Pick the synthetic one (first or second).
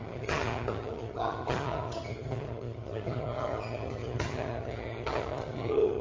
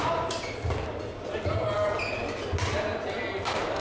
first